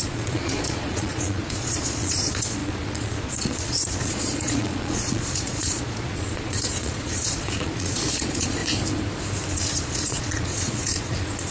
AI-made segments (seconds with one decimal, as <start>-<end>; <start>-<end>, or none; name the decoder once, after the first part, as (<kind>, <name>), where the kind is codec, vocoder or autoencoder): 0.0-8.6 (vocoder, Vocos); 9.5-11.5